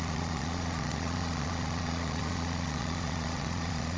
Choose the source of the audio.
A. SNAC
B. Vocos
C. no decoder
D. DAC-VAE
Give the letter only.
B